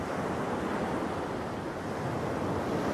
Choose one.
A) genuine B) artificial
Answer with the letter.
A